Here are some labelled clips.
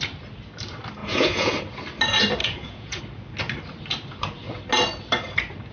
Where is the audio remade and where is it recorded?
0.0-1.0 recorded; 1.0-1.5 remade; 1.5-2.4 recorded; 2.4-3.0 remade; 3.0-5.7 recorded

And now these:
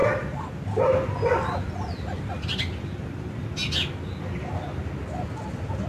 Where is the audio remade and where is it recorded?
0.0-5.9 recorded

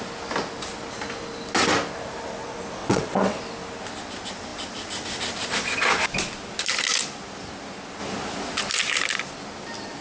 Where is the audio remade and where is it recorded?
0.0-2.8 recorded; 2.8-3.4 remade; 3.4-10.0 recorded

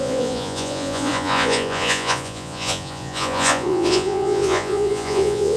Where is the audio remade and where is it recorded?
0.0-5.6 remade

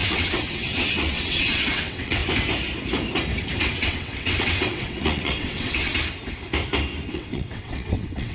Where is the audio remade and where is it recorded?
0.0-2.2 remade; 2.2-3.6 recorded; 3.6-5.9 remade; 5.9-7.1 recorded; 7.1-8.3 remade

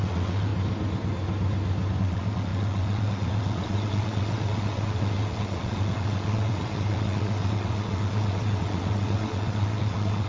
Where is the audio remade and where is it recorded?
0.0-0.5 remade; 0.5-2.0 recorded; 2.0-10.3 remade